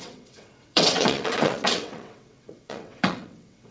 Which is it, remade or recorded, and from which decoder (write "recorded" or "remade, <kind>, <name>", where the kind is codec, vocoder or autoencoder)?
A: remade, vocoder, WaveNeXt